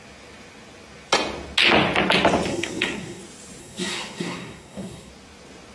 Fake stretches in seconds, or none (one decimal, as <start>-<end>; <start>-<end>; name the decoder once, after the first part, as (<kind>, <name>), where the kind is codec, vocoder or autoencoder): 2.5-3.2 (codec, SNAC); 3.6-5.1